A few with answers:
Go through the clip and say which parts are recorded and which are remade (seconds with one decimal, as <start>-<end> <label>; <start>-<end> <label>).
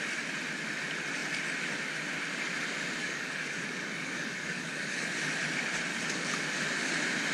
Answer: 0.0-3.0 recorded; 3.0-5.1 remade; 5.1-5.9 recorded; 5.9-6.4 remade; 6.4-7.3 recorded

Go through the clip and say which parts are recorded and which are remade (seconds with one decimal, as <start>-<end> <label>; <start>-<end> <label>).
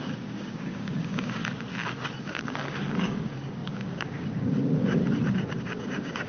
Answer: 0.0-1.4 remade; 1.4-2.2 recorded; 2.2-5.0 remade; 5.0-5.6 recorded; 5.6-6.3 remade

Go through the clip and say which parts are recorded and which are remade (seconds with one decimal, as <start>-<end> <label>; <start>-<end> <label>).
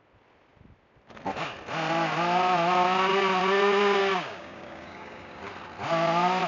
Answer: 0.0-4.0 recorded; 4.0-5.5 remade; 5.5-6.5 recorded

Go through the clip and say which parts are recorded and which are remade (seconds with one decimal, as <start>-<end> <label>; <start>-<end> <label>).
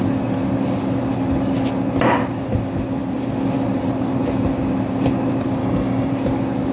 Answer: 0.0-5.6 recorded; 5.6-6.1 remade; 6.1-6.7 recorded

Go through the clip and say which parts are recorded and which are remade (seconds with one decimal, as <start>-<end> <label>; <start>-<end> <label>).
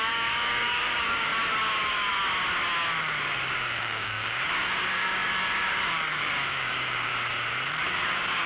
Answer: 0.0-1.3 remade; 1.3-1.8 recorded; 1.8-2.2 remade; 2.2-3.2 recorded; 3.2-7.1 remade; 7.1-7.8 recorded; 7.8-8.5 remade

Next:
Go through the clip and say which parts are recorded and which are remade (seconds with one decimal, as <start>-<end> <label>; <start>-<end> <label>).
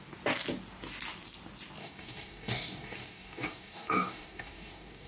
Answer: 0.0-1.8 recorded; 1.8-5.1 remade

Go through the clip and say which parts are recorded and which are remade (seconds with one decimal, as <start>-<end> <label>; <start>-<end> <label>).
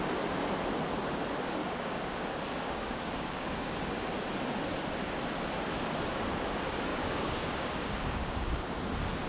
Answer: 0.0-1.6 recorded; 1.6-3.7 remade; 3.7-6.9 recorded; 6.9-8.7 remade; 8.7-9.3 recorded